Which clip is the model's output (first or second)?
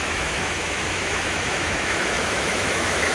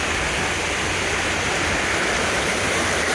first